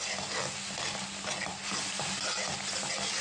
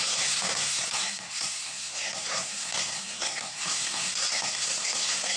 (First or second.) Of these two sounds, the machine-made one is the second